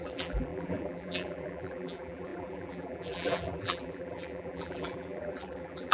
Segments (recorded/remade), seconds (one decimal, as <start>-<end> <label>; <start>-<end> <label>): 0.0-5.9 remade